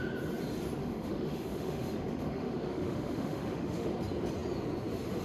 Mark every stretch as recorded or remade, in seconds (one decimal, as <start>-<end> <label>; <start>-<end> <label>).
0.0-0.8 recorded; 0.8-3.9 remade; 3.9-5.2 recorded